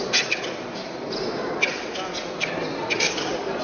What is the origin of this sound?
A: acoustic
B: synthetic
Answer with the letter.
A